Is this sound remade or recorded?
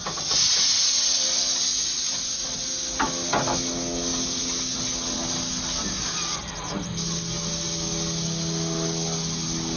recorded